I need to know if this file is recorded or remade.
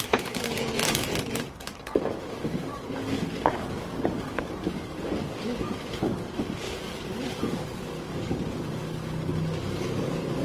remade